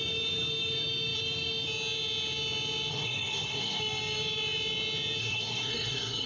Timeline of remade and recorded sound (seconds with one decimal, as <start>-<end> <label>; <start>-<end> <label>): 0.0-2.9 recorded; 2.9-3.8 remade; 3.8-5.2 recorded; 5.2-6.3 remade